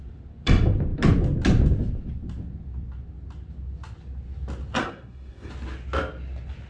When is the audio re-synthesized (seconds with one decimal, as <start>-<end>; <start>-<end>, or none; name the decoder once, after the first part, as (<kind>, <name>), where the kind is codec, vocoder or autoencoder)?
4.8-5.5 (codec, SNAC)